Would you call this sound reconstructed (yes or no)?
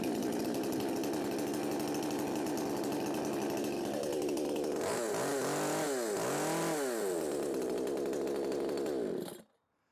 no